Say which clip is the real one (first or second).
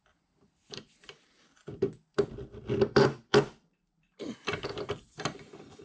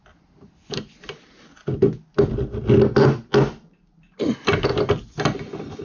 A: second